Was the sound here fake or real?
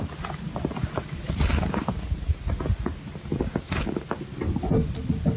real